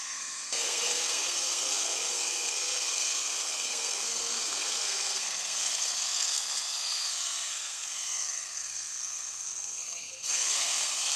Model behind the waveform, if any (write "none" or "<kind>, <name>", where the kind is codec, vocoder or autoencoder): codec, SNAC